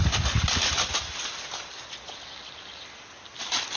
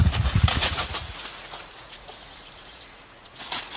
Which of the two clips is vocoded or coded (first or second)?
second